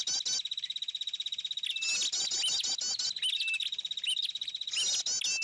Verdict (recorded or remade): recorded